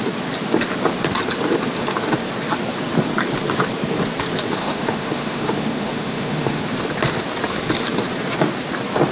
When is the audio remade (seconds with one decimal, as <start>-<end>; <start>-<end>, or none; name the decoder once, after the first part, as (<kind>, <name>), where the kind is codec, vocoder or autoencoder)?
4.6-6.6 (autoencoder, DAC-VAE)